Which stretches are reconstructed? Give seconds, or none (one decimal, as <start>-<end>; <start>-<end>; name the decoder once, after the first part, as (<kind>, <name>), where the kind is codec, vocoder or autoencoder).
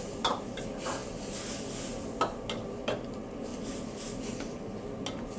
none